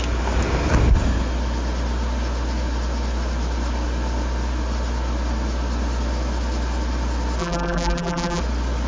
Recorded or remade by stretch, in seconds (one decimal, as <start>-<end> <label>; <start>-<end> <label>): 0.0-7.4 recorded; 7.4-8.4 remade; 8.4-8.9 recorded